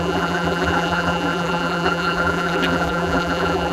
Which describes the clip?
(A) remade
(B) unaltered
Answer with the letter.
A